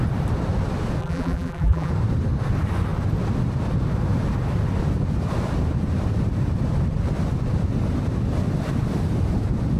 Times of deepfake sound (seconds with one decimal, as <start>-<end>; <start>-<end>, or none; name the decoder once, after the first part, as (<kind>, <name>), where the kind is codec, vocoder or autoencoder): 1.0-1.9 (vocoder, BigVGAN v2)